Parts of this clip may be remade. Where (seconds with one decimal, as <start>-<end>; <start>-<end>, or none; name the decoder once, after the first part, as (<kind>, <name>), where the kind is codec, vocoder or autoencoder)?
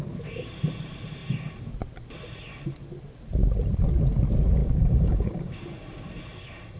4.6-5.6 (codec, DAC)